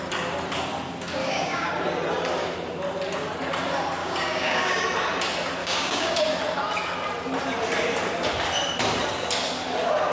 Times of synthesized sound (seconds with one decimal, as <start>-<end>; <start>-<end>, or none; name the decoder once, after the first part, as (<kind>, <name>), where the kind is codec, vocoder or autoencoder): 1.2-1.7 (codec, DAC); 4.0-4.8; 5.6-6.2